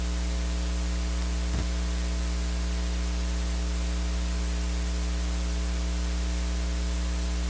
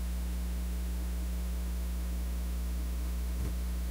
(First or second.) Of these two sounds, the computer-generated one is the second